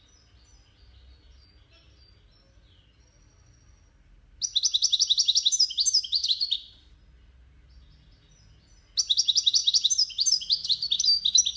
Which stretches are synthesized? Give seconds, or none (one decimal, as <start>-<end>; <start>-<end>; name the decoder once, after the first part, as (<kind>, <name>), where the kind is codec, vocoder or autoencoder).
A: none